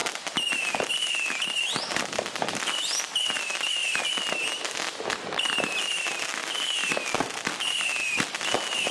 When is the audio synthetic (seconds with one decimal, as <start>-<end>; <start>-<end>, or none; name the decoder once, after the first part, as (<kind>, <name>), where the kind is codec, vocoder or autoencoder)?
none